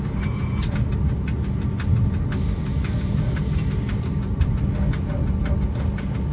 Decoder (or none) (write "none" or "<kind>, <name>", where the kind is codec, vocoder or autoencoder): none